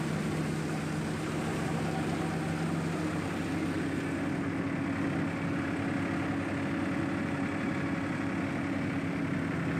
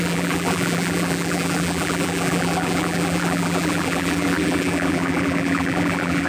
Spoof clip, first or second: second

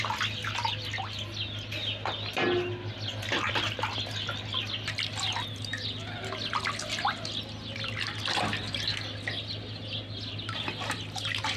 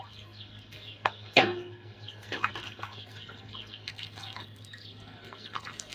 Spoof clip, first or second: second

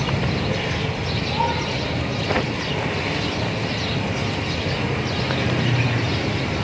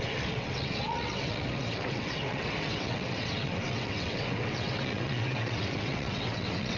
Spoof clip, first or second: second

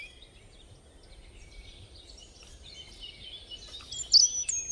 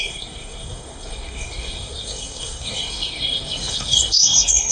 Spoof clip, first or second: second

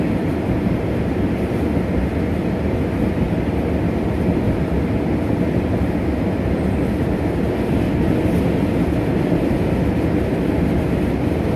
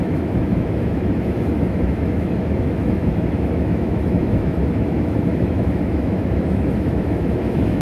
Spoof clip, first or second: second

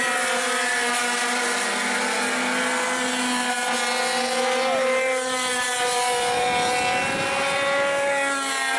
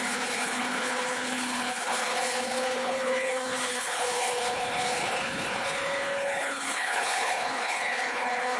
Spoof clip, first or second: second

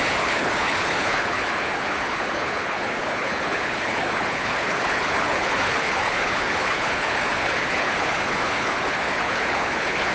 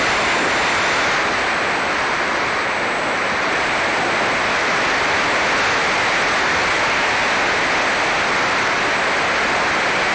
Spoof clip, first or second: first